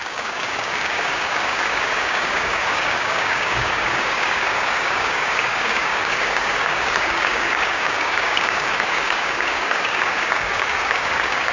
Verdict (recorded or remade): remade